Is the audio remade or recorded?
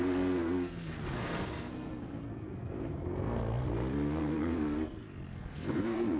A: remade